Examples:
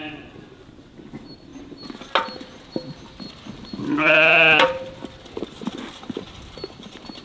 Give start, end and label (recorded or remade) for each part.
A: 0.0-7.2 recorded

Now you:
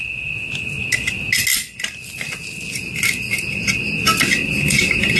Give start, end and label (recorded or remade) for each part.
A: 0.0-5.2 recorded

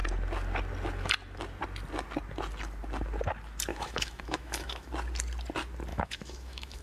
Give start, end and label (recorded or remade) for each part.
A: 0.0-3.7 recorded; 3.7-4.9 remade; 4.9-5.9 recorded; 5.9-6.8 remade